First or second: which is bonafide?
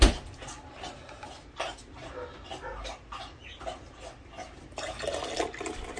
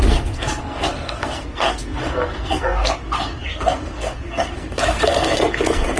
first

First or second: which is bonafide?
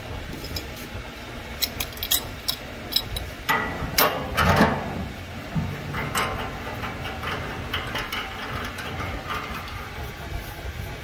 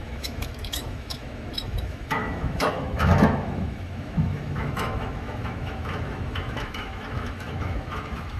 first